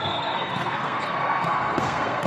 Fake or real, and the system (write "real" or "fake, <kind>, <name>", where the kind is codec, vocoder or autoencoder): fake, codec, SNAC